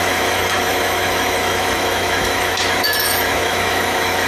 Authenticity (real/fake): fake